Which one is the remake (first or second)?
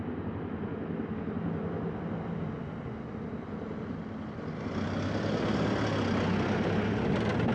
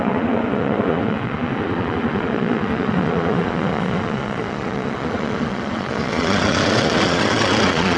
second